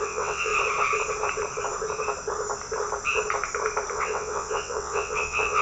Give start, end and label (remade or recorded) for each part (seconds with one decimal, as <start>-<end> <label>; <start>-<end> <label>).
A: 0.0-0.5 remade; 0.5-3.9 recorded; 3.9-5.6 remade